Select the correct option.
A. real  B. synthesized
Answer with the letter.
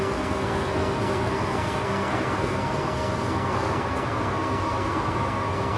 B